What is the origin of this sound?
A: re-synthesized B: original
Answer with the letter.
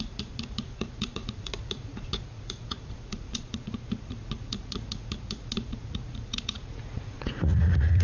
A